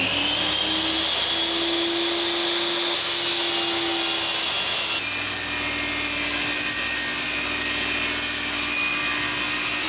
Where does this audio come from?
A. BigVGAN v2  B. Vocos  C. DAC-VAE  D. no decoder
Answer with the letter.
D